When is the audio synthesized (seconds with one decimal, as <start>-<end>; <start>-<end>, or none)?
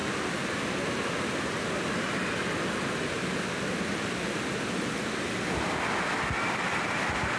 none